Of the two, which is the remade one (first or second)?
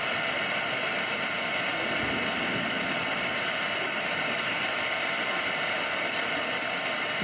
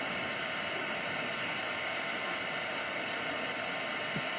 first